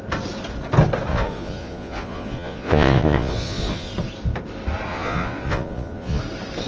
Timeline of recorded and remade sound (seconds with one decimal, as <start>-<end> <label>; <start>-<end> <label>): 0.0-1.1 recorded; 1.1-3.9 remade; 3.9-4.9 recorded; 4.9-6.2 remade; 6.2-6.7 recorded